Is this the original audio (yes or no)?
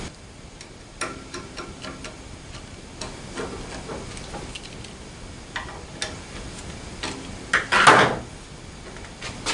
yes